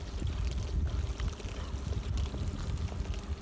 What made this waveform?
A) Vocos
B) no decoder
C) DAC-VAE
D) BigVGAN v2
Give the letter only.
B